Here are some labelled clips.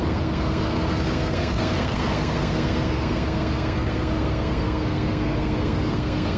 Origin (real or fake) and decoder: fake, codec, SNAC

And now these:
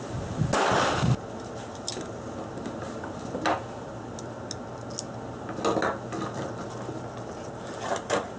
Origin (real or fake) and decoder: real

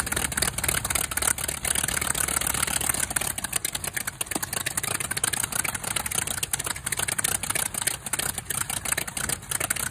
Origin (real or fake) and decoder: real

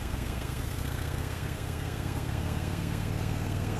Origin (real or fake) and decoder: fake, codec, SNAC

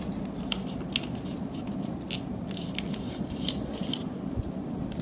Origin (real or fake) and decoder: real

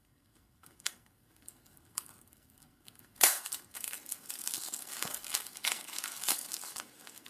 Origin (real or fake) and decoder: fake, codec, SNAC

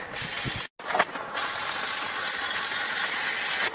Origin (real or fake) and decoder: real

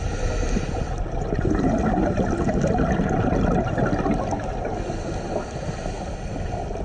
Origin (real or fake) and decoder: real